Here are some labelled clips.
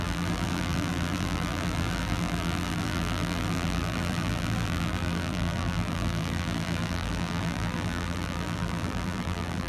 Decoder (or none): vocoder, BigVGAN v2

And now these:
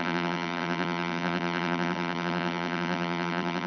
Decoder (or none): vocoder, BigVGAN v2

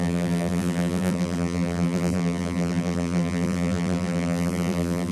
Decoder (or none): vocoder, BigVGAN v2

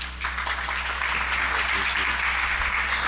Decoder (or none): none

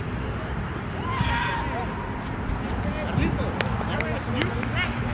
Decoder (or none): none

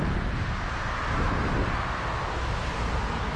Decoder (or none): none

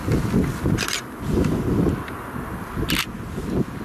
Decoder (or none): none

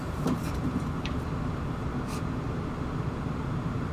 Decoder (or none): vocoder, BigVGAN v2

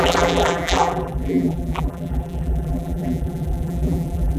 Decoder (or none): vocoder, BigVGAN v2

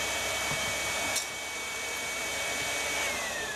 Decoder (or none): none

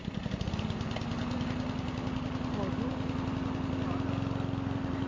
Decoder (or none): none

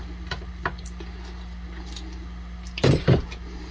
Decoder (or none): none